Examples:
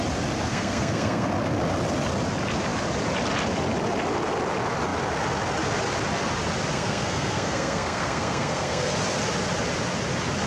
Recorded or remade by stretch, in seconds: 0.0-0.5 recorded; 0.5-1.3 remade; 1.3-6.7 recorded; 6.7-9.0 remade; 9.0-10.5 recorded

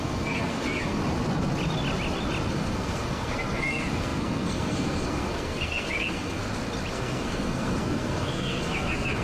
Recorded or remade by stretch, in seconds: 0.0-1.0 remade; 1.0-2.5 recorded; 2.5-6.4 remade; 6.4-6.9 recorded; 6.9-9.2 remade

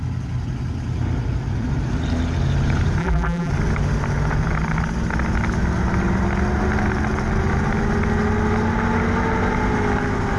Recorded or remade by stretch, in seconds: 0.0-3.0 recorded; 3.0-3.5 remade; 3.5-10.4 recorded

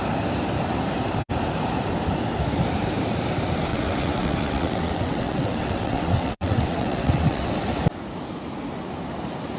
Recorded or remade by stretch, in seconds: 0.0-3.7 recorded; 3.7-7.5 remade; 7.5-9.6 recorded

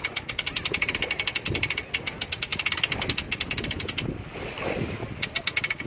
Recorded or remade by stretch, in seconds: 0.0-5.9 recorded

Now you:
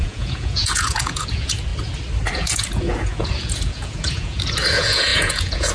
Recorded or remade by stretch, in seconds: 0.0-1.7 remade; 1.7-2.3 recorded; 2.3-5.7 remade

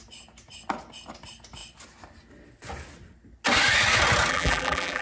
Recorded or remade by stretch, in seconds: 0.0-4.3 recorded; 4.3-5.0 remade